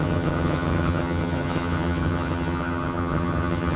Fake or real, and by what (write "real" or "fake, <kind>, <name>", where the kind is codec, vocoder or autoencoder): fake, vocoder, HiFi-GAN